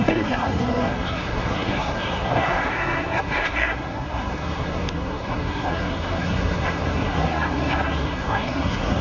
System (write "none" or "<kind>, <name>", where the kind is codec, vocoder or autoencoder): codec, SNAC